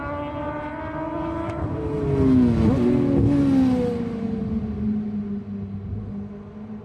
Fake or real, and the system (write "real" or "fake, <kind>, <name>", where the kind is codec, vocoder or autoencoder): real